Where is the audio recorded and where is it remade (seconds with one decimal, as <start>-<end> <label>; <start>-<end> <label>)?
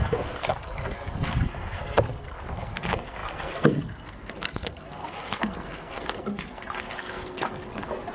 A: 0.0-8.1 remade